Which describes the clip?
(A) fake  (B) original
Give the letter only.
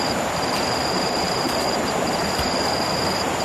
A